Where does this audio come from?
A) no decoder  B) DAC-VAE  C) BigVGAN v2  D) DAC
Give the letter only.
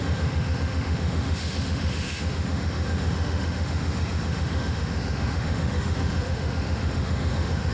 B